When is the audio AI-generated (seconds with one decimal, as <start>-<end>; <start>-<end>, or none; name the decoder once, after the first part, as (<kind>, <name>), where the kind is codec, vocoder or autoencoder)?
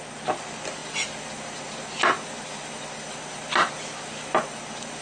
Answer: none